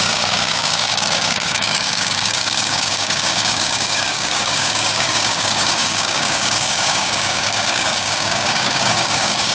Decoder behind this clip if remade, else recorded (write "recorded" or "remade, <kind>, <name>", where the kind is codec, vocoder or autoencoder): remade, codec, DAC